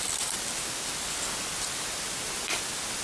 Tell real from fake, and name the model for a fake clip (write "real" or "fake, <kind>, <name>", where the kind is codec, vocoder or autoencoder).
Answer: real